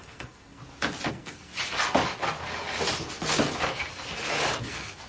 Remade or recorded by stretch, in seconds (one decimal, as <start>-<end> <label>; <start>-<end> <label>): 0.0-0.6 remade; 0.6-1.1 recorded; 1.1-1.5 remade; 1.5-4.6 recorded; 4.6-5.1 remade

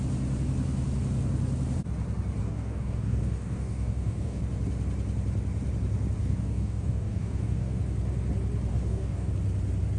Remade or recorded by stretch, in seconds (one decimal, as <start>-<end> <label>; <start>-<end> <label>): 0.0-2.4 recorded; 2.4-4.4 remade; 4.4-6.2 recorded; 6.2-7.8 remade; 7.8-8.7 recorded; 8.7-9.3 remade; 9.3-10.0 recorded

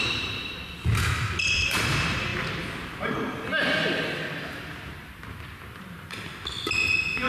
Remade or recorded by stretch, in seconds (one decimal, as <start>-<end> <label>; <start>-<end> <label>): 0.0-0.4 remade; 0.4-1.2 recorded; 1.2-2.3 remade; 2.3-4.4 recorded; 4.4-6.3 remade; 6.3-7.3 recorded